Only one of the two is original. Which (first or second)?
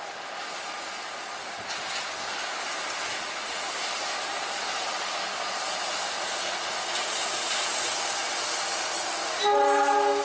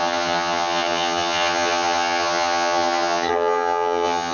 first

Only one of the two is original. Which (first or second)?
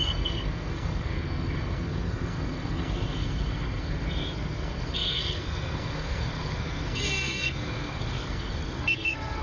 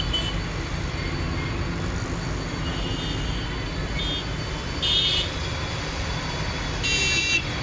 second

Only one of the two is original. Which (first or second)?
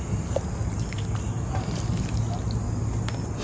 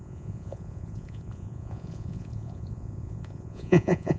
first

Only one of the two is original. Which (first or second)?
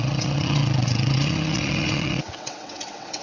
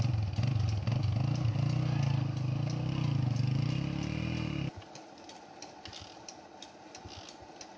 second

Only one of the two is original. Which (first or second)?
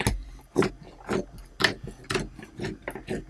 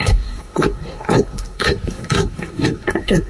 first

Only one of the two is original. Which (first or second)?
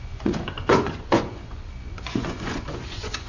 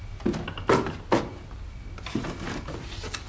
second